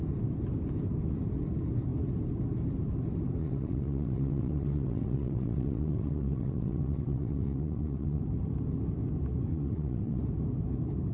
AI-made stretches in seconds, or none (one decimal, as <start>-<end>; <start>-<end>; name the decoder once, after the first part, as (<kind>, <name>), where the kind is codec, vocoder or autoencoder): 3.4-8.2 (vocoder, WaveNeXt); 9.5-10.2